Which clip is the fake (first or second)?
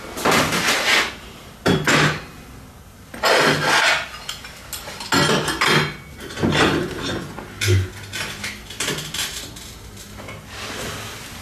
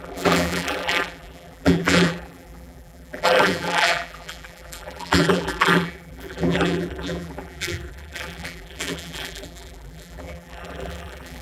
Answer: second